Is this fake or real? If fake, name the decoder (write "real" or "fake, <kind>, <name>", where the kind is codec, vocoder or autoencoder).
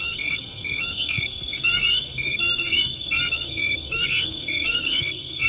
fake, codec, SNAC